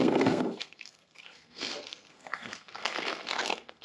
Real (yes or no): no